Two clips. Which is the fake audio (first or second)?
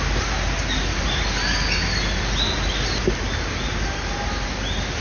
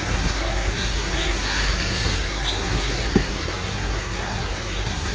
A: second